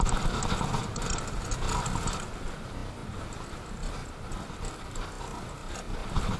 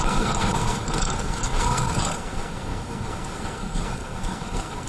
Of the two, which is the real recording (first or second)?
first